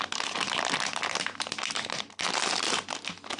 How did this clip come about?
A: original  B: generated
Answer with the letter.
A